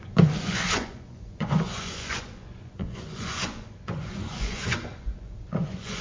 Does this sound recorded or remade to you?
remade